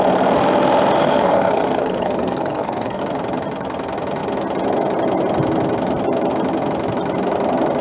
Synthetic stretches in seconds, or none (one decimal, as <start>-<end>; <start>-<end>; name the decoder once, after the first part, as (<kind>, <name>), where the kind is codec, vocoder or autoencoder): 1.0-3.0 (codec, SNAC)